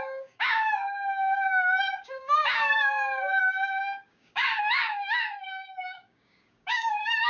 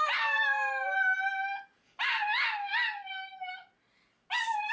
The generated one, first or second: first